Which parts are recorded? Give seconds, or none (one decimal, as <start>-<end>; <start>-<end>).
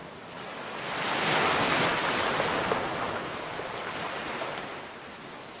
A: 0.0-5.6